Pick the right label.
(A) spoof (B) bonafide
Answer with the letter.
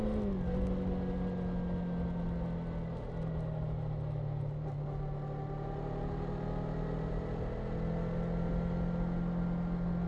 B